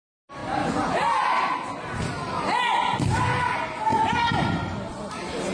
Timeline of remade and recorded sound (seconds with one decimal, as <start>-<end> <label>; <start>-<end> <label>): 0.0-3.9 recorded; 3.9-4.9 remade; 4.9-5.5 recorded